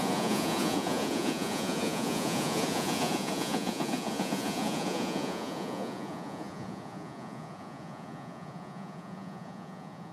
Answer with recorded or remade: remade